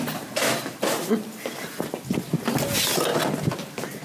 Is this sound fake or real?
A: real